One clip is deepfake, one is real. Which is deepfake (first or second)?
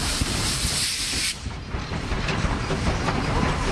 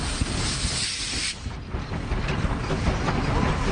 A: first